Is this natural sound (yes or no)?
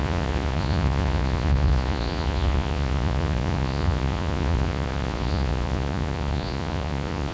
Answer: no